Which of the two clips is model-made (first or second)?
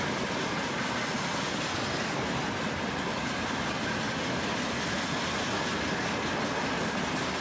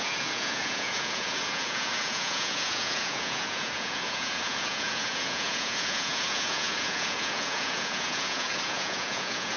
second